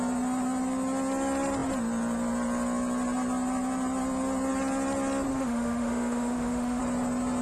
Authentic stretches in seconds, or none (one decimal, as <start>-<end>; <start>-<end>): 0.0-5.3; 6.8-7.4